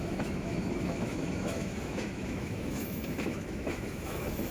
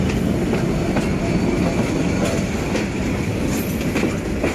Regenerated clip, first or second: first